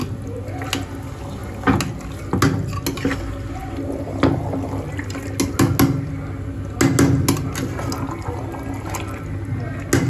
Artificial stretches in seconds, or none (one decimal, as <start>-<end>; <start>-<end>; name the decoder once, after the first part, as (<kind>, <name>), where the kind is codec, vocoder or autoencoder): none